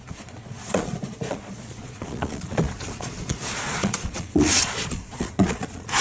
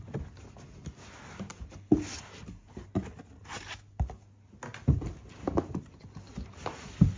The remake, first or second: first